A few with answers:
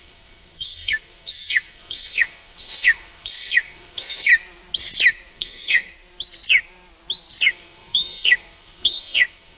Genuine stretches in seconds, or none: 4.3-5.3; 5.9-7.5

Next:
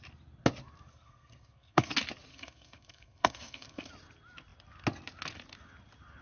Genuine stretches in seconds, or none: 0.0-0.9; 1.9-2.3; 3.9-6.2

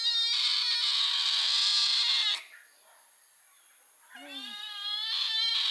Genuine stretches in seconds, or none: 0.0-5.7

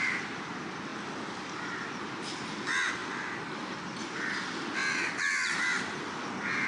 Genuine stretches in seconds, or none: 0.0-6.7

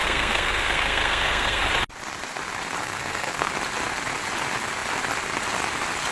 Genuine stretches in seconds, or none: 1.6-2.8; 3.5-6.1

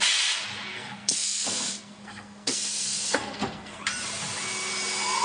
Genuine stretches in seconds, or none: 0.0-0.7; 3.8-5.2

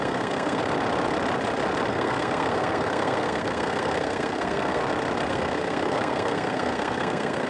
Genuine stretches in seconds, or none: 0.6-1.9; 4.8-5.3

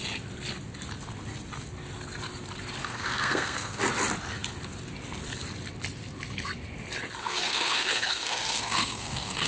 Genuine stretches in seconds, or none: 0.0-2.8; 3.8-7.2